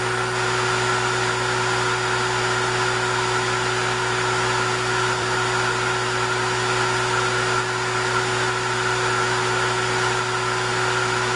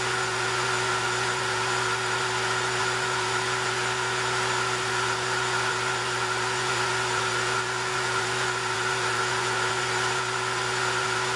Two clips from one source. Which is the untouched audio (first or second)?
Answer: first